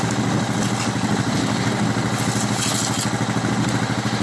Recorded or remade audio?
recorded